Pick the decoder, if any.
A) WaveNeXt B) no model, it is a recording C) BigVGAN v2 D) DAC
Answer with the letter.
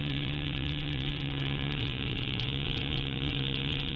A